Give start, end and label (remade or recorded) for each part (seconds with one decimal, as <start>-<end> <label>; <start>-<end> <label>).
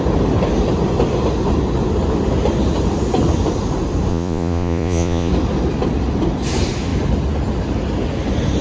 0.0-4.1 recorded; 4.1-5.3 remade; 5.3-8.6 recorded